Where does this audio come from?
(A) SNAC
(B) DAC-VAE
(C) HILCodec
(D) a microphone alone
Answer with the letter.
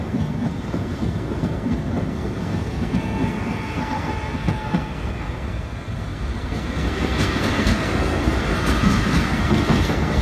A